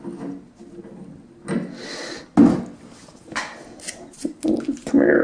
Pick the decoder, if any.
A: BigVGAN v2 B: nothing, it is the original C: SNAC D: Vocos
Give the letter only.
B